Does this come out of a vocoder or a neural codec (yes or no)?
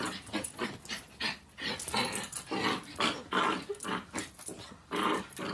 no